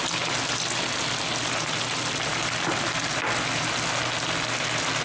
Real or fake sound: real